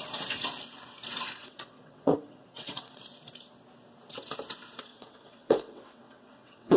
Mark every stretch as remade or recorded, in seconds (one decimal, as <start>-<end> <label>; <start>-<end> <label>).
0.0-1.4 recorded; 1.4-3.0 remade; 3.0-4.9 recorded; 4.9-6.8 remade